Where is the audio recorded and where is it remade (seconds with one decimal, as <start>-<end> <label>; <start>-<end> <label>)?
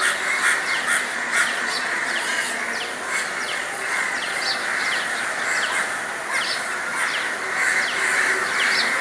0.0-1.1 recorded; 1.1-2.6 remade; 2.6-3.4 recorded; 3.4-4.4 remade; 4.4-9.0 recorded